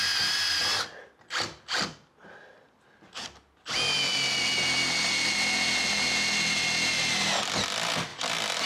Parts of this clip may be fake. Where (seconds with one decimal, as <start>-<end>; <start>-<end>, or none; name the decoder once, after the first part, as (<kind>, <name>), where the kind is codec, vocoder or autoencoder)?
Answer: none